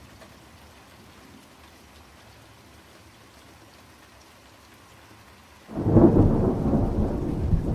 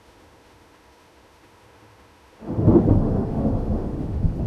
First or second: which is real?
first